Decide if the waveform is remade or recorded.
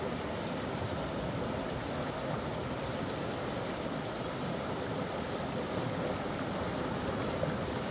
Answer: recorded